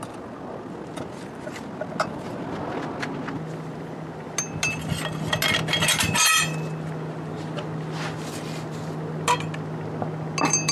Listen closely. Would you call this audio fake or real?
real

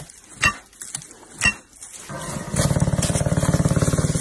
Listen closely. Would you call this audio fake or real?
real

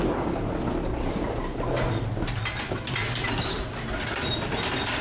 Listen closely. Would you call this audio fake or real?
real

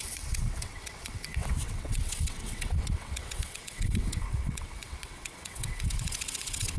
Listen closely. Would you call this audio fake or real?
fake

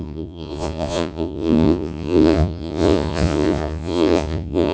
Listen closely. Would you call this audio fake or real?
fake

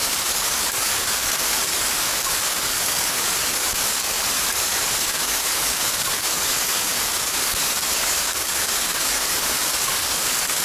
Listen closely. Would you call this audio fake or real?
fake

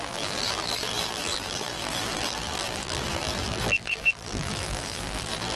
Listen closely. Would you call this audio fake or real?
fake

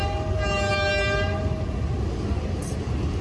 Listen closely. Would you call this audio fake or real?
real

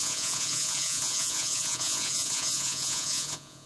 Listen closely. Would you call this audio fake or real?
fake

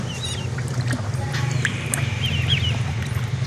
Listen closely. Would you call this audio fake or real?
real